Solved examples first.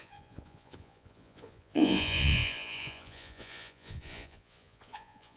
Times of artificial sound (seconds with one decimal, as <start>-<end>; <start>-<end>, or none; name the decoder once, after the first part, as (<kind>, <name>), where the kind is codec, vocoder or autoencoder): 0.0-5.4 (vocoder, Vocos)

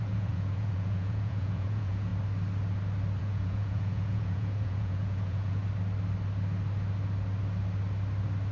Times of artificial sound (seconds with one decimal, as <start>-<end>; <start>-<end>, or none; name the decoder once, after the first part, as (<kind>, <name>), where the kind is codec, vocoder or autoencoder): 0.0-2.1 (vocoder, Vocos); 3.2-5.6

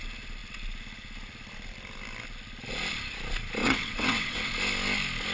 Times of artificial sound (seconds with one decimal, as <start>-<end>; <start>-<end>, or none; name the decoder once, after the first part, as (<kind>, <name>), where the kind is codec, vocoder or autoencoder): 3.6-4.5 (vocoder, WaveNeXt)

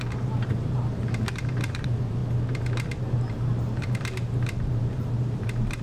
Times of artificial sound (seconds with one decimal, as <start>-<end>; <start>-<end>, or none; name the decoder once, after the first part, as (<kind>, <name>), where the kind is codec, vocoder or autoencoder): 0.0-2.2 (vocoder, BigVGAN v2); 3.3-5.8

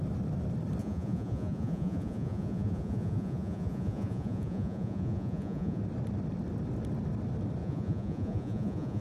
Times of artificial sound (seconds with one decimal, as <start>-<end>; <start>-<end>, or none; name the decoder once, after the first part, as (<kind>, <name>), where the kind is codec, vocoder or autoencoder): 0.8-5.8 (vocoder, Vocos); 7.6-9.0

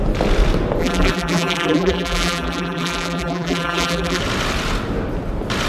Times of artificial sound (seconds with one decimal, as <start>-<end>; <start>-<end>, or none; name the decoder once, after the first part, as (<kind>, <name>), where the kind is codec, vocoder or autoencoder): 0.8-4.2 (vocoder, BigVGAN v2)